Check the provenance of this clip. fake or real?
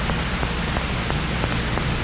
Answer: real